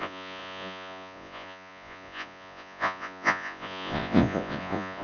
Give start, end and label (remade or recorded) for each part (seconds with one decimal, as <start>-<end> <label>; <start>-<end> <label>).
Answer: 0.0-5.0 remade